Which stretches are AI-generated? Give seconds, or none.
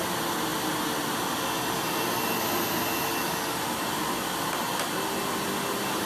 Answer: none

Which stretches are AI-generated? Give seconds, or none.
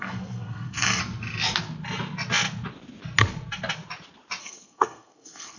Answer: 0.0-1.0 (codec, SNAC); 4.4-5.6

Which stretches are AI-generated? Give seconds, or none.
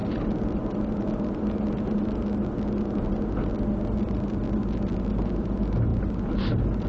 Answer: none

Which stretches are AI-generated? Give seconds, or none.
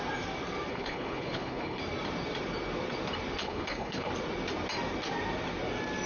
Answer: 0.7-1.8 (codec, HILCodec); 3.4-4.1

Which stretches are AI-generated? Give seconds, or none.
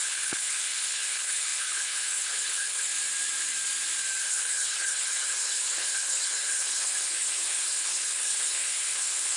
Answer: 0.0-2.9 (codec, HILCodec); 4.2-9.4